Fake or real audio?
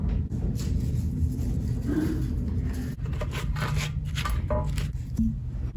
real